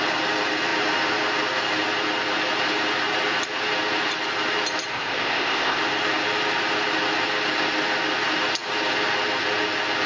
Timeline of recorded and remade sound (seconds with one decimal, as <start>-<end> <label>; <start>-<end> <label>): 0.0-4.9 recorded; 4.9-5.8 remade; 5.8-10.1 recorded

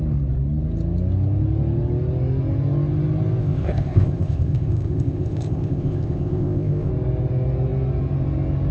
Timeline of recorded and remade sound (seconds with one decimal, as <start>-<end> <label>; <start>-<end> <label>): 0.0-3.4 recorded; 3.4-6.9 remade; 6.9-8.7 recorded

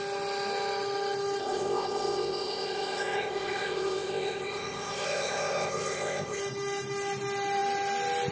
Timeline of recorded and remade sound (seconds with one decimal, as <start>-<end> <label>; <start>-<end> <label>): 0.0-1.4 recorded; 1.4-6.4 remade; 6.4-8.3 recorded